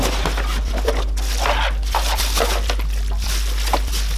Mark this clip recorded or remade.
recorded